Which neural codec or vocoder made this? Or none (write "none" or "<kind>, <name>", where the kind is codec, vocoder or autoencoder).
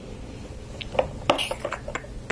none